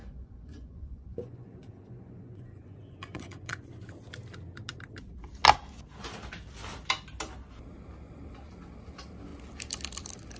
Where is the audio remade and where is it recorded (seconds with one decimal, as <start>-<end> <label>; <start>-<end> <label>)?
0.0-3.6 remade; 3.6-10.4 recorded